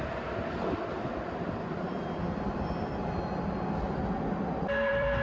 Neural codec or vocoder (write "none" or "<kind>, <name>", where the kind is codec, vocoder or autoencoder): vocoder, BigVGAN v2